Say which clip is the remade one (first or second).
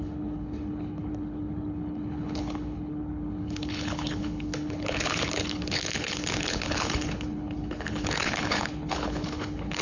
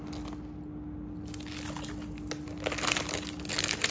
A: first